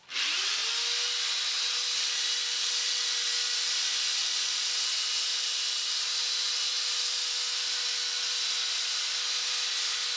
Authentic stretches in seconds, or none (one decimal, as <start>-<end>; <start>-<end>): 0.0-10.2